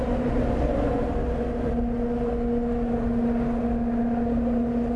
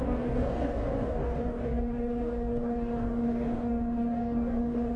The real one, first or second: first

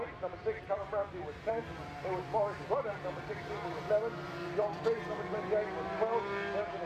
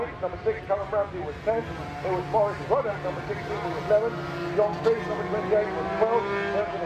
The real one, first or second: second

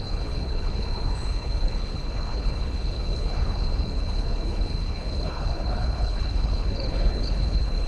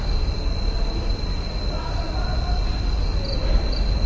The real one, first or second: second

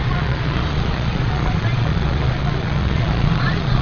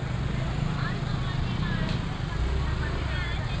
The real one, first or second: second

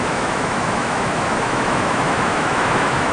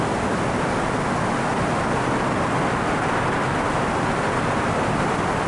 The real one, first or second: second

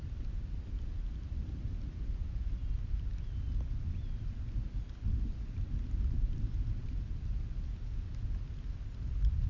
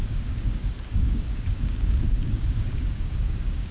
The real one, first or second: first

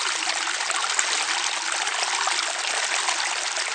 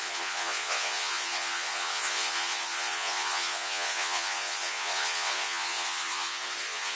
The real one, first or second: first